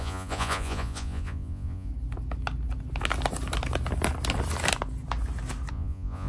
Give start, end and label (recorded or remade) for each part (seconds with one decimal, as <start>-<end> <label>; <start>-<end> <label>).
0.0-1.9 remade; 1.9-5.7 recorded; 5.7-6.3 remade